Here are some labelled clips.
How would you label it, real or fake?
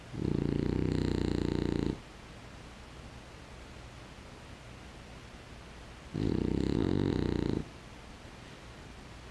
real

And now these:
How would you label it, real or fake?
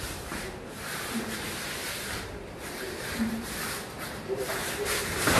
fake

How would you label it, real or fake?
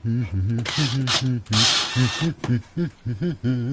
real